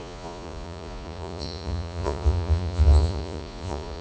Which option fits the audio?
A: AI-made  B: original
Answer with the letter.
A